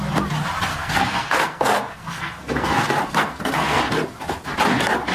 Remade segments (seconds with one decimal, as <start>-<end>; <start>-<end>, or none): 0.7-3.8